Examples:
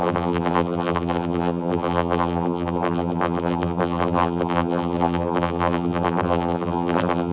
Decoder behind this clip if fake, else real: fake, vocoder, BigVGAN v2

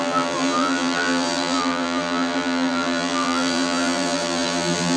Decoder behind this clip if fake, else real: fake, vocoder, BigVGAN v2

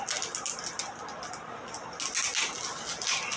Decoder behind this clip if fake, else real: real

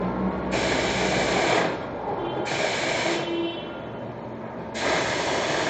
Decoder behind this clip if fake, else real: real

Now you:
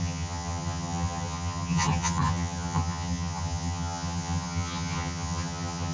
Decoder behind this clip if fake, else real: fake, vocoder, HiFi-GAN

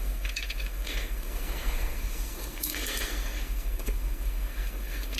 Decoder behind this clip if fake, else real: fake, codec, SNAC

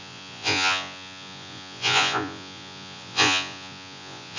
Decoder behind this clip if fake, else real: fake, vocoder, Vocos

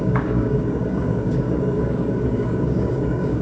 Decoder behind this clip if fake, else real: fake, codec, DAC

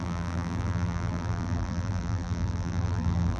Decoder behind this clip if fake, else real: fake, vocoder, BigVGAN v2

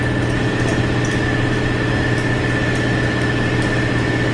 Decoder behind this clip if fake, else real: real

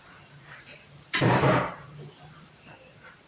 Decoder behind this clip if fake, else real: fake, vocoder, BigVGAN v2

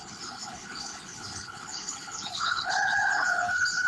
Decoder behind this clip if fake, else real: fake, codec, HILCodec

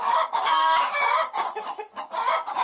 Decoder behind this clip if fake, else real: fake, codec, DAC